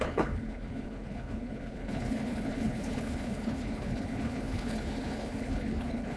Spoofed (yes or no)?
yes